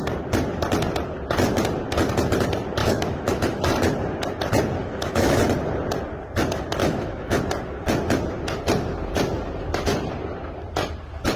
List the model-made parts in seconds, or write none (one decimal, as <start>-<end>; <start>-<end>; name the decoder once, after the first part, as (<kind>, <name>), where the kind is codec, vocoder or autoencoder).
2.8-3.7 (autoencoder, DAC-VAE); 4.8-5.4; 6.8-7.4